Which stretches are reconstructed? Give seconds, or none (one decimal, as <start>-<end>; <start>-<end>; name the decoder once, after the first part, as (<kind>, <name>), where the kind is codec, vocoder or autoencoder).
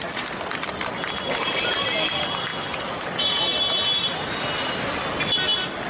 none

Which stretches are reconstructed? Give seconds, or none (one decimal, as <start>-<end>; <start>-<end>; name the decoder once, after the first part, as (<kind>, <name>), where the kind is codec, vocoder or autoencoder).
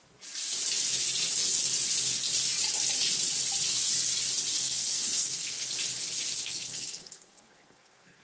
4.5-5.7 (codec, SNAC); 6.4-8.2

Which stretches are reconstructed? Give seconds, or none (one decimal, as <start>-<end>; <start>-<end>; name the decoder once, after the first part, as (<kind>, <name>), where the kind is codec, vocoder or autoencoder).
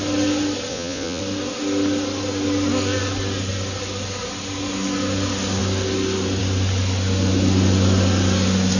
0.7-1.2 (vocoder, Vocos)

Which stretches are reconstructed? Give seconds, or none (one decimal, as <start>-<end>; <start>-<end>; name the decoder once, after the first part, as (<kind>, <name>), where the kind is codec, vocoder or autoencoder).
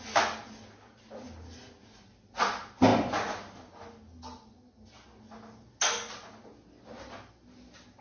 none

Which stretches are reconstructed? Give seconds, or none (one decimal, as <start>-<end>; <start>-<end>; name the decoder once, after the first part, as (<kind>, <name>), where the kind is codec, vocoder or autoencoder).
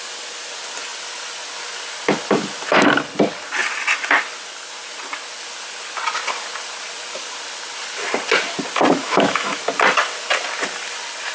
9.0-9.6 (autoencoder, DAC-VAE)